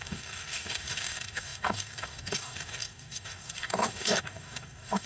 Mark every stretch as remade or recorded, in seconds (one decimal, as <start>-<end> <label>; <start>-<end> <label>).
0.0-5.1 remade